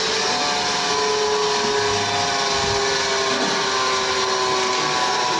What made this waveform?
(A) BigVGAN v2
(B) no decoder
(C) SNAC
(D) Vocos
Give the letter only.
B